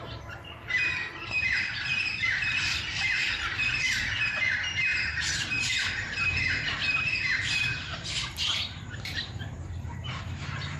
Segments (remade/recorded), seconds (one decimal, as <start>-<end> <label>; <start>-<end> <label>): 0.0-10.8 remade